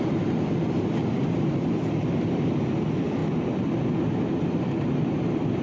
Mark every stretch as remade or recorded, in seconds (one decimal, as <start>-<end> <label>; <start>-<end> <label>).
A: 0.0-5.6 recorded